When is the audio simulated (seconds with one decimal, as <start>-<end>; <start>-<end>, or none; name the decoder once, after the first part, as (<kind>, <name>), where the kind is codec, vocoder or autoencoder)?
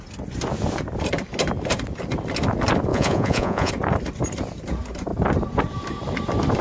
2.9-3.7 (vocoder, Vocos)